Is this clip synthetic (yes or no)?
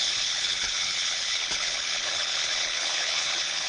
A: yes